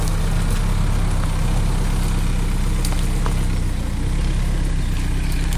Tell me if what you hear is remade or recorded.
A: recorded